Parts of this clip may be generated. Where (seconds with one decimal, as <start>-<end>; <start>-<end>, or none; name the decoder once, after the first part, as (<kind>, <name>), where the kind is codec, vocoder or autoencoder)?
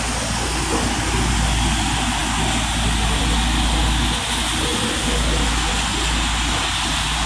none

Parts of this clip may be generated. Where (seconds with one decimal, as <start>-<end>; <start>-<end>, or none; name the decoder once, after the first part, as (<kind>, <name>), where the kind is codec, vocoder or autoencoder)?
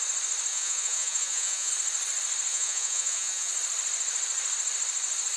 0.5-1.7 (vocoder, Vocos); 2.5-3.5